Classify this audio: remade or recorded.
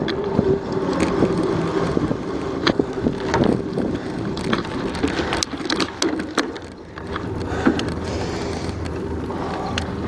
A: recorded